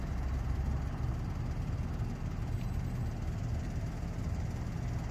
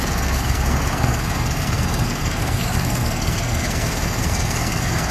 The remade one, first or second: second